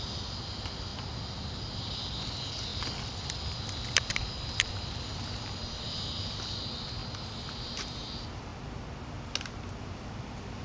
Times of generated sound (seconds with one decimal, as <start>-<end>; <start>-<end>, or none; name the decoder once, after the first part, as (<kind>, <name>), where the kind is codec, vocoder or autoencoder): 0.0-0.9 (vocoder, BigVGAN v2); 1.6-8.5

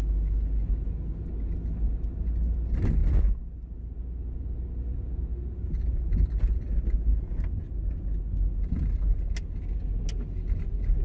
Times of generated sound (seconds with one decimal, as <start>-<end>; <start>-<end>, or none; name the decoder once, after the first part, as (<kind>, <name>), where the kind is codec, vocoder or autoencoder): none